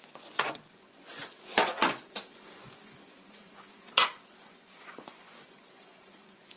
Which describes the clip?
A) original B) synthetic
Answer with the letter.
B